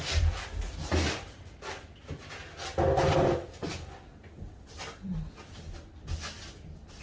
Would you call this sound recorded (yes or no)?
yes